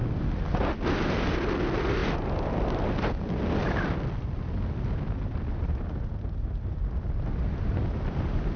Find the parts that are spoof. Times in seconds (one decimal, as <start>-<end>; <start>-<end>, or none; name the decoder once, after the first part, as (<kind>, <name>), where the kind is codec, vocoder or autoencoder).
none